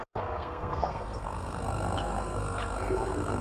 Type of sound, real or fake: fake